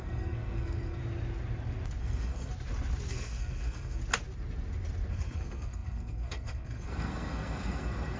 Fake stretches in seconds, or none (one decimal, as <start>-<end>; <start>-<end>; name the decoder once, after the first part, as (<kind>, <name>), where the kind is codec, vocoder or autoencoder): 0.0-1.0 (codec, SNAC); 2.0-2.5; 3.1-4.0; 5.1-8.2

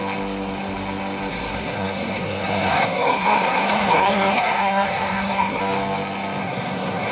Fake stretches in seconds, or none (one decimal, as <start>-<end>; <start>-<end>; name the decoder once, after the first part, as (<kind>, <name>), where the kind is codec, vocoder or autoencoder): 1.3-5.6 (codec, SNAC); 6.4-7.1